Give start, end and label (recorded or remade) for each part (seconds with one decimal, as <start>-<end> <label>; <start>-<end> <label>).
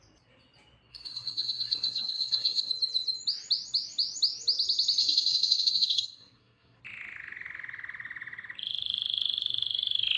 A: 0.0-0.9 recorded; 0.9-2.7 remade; 2.7-5.0 recorded; 5.0-6.8 remade; 6.8-10.2 recorded